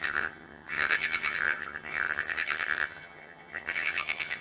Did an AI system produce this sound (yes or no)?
yes